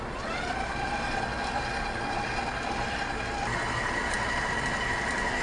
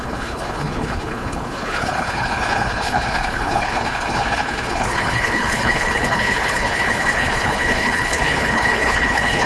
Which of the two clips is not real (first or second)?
second